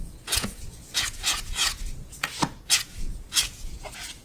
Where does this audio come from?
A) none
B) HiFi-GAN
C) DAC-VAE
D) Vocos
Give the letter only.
D